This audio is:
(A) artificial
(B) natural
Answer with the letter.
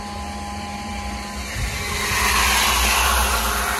B